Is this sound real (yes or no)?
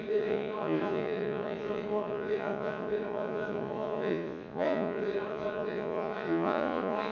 no